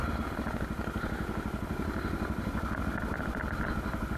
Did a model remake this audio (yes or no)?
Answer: no